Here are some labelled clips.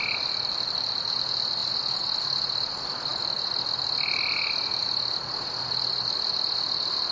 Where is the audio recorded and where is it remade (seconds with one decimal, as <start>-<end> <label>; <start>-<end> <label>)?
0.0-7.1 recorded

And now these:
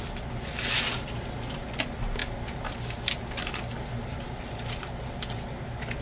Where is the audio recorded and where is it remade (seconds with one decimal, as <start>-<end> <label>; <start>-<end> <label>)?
0.0-6.0 recorded

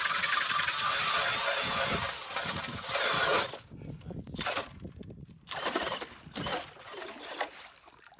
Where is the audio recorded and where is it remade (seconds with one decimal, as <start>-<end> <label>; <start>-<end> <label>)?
0.0-8.2 recorded

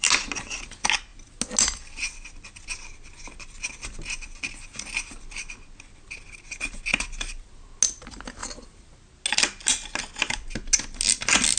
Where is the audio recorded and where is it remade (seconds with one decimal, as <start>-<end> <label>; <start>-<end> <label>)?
0.0-11.6 recorded

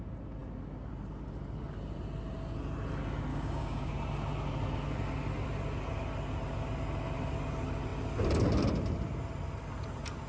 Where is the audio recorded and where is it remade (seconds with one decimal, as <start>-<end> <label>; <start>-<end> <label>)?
0.0-3.3 recorded; 3.3-3.9 remade; 3.9-10.3 recorded